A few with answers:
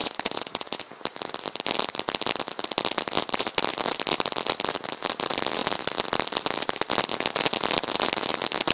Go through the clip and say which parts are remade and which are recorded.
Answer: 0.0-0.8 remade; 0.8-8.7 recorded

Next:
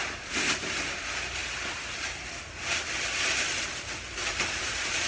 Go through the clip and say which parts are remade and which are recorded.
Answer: 0.0-5.1 recorded

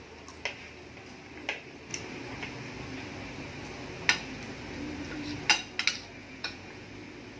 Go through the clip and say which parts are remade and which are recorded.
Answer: 0.0-6.2 recorded; 6.2-6.9 remade; 6.9-7.4 recorded

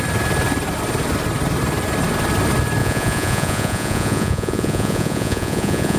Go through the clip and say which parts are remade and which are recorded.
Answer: 0.0-2.8 recorded; 2.8-6.0 remade

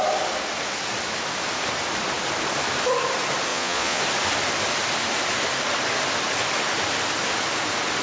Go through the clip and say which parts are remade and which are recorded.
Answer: 0.0-3.5 recorded; 3.5-4.0 remade; 4.0-8.0 recorded

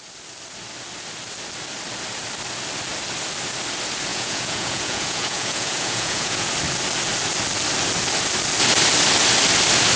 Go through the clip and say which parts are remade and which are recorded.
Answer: 0.0-4.1 recorded; 4.1-6.5 remade; 6.5-10.0 recorded